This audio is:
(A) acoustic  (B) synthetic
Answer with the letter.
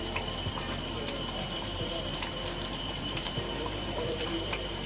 B